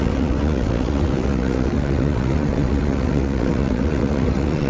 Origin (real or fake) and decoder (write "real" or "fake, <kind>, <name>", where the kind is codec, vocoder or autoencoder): fake, vocoder, WaveNeXt